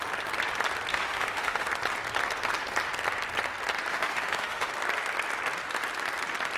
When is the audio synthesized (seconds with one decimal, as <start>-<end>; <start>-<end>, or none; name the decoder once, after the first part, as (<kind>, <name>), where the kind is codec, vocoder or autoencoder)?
0.9-1.7 (autoencoder, DAC-VAE); 3.9-4.7

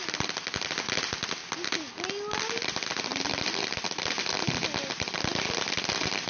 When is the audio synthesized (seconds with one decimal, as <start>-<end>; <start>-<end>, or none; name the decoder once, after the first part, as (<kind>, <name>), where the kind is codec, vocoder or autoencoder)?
none

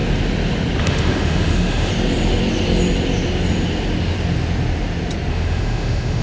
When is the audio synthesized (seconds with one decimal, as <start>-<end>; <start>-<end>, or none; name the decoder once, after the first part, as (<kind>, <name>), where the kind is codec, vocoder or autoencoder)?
0.8-1.9 (autoencoder, DAC-VAE); 5.3-6.2